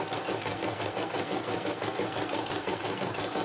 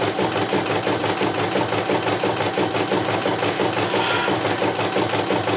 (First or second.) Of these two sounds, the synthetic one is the first